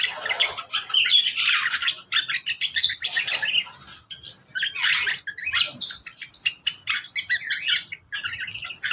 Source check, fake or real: real